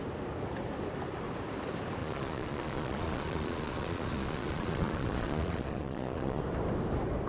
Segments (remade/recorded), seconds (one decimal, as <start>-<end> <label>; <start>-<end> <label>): 0.0-2.0 recorded; 2.0-6.4 remade; 6.4-7.3 recorded